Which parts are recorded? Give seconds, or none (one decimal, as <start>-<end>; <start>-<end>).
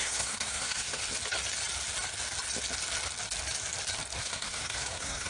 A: 1.0-4.2